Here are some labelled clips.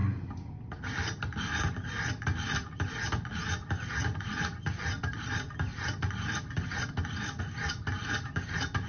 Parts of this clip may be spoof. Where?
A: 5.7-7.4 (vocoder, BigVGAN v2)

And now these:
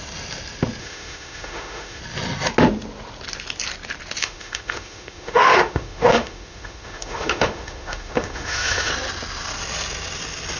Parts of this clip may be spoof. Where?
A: 0.8-2.0 (autoencoder, DAC-VAE); 4.2-8.9

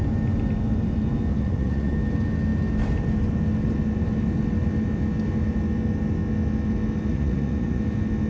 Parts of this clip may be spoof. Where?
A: 1.3-1.9 (vocoder, Vocos); 7.1-7.8

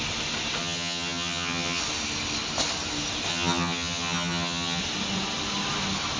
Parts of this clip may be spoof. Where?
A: 0.6-1.8 (vocoder, HiFi-GAN); 3.3-4.8

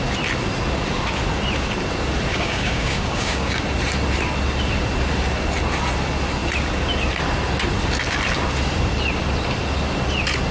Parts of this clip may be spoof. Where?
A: 2.3-3.6 (codec, DAC)

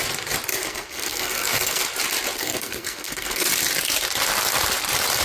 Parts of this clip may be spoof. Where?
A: 0.5-1.8 (codec, SNAC); 2.4-3.5

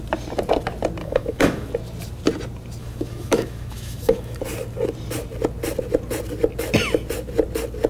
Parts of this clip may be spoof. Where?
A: 1.0-1.7 (autoencoder, DAC-VAE); 2.8-4.4